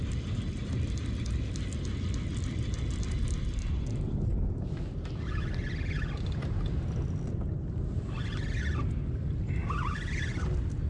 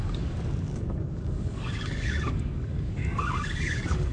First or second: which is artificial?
second